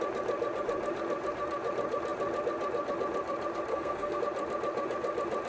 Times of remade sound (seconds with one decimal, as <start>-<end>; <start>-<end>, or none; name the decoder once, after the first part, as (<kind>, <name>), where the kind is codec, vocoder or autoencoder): 3.7-4.2 (codec, SNAC)